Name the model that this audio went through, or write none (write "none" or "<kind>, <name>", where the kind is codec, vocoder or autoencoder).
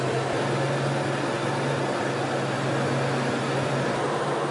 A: none